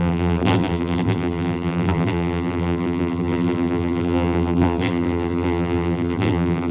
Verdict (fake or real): fake